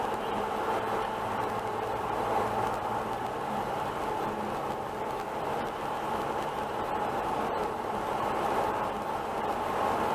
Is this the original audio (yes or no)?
no